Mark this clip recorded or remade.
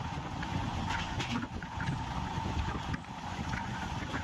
remade